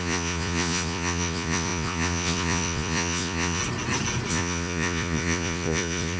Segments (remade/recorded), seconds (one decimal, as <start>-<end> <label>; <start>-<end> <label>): 0.0-3.6 remade; 3.6-4.3 recorded; 4.3-6.2 remade